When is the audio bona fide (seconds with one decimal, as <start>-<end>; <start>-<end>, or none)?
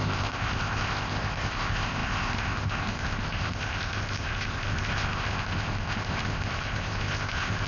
none